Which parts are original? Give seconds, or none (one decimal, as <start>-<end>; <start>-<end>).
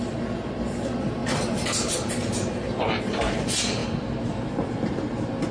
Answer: 0.0-5.5